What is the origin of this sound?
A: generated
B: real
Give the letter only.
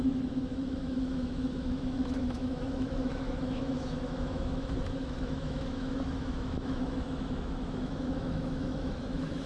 A